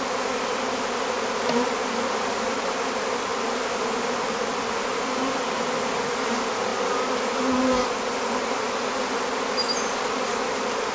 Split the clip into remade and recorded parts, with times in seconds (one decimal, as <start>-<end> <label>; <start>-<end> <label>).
0.0-10.9 recorded